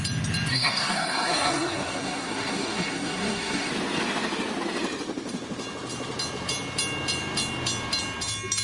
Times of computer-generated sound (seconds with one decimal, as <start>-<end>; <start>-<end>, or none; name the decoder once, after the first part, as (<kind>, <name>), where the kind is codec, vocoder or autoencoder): 0.5-3.7 (codec, SNAC)